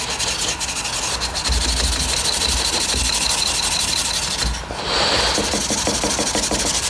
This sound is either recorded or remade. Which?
recorded